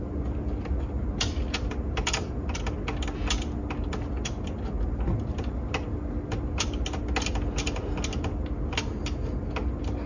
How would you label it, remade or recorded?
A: recorded